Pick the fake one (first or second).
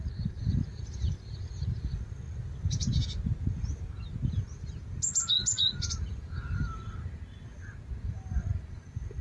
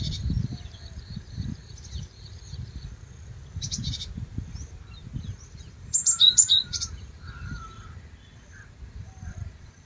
second